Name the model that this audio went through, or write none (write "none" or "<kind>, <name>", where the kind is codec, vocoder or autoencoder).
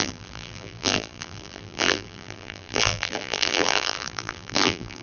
vocoder, BigVGAN v2